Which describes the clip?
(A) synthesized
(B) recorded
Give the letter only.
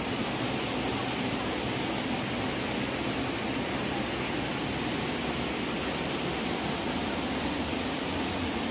B